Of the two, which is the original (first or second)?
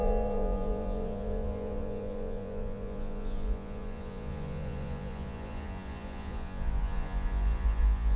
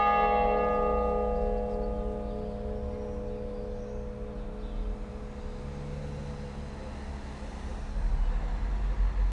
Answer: second